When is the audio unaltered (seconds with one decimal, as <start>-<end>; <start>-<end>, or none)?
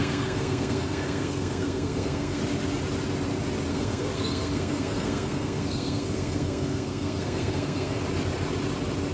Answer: 2.4-3.7; 8.0-9.1